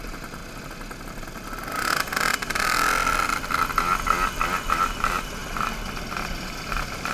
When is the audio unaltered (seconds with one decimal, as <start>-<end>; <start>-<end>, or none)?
0.4-4.7; 5.4-6.3